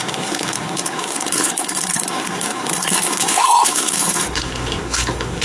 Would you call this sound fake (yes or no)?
yes